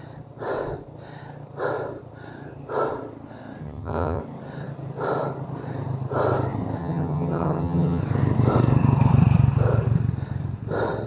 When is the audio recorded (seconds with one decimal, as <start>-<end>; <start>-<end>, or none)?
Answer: 0.0-3.6; 4.2-6.8; 8.0-11.1